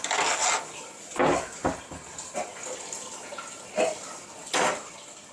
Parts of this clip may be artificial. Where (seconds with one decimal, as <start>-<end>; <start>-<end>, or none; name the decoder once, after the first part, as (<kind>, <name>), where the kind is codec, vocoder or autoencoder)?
none